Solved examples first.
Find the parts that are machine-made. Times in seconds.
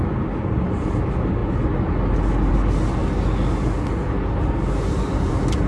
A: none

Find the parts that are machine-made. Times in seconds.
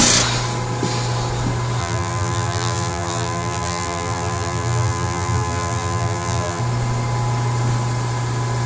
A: 1.8-6.6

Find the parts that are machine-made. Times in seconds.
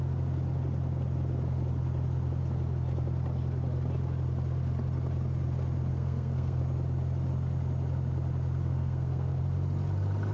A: 5.9-6.6; 8.6-9.4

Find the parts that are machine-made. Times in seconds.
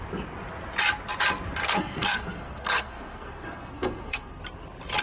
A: 1.6-4.4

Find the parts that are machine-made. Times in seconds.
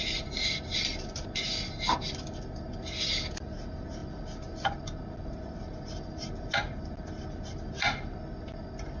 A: none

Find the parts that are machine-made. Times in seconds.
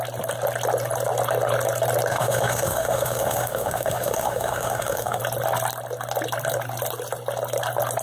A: 2.1-5.2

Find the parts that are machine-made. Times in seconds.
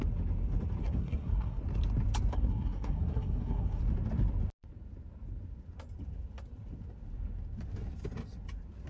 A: 0.8-1.6; 2.3-3.8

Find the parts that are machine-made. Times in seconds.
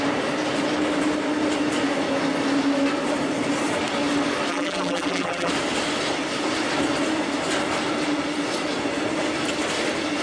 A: 4.5-5.5